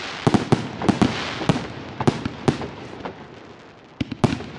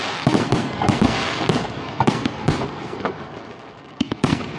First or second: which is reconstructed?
second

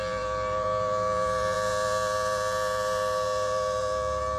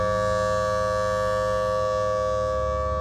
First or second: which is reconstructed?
first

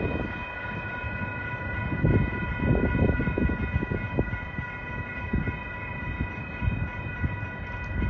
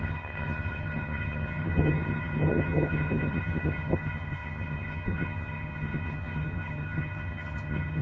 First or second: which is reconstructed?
second